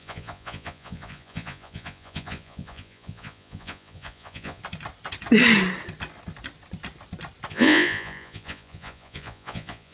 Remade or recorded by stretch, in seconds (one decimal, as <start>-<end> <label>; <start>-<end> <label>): 0.0-4.6 remade; 4.6-7.5 recorded; 7.5-9.9 remade

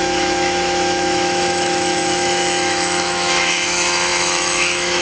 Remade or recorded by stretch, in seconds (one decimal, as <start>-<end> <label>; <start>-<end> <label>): 0.0-5.0 remade

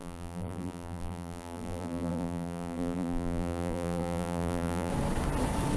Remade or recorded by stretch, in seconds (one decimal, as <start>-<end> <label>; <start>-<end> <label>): 0.0-4.9 remade; 4.9-5.8 recorded

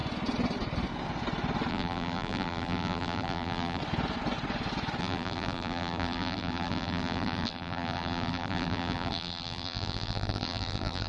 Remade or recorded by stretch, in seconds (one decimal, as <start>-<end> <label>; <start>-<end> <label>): 0.0-1.7 recorded; 1.7-3.8 remade; 3.8-5.0 recorded; 5.0-11.1 remade

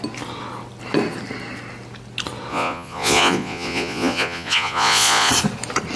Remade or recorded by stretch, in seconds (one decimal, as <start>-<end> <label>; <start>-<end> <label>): 0.0-2.5 recorded; 2.5-5.3 remade; 5.3-6.0 recorded